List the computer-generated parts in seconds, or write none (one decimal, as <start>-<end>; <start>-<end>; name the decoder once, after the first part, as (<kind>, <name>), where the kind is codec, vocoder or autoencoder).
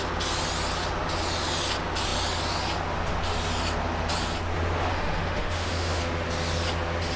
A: 4.9-6.0 (autoencoder, DAC-VAE)